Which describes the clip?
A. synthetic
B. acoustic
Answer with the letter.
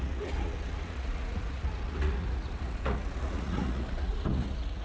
A